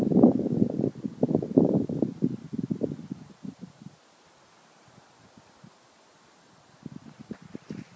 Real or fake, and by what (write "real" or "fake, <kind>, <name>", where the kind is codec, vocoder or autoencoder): real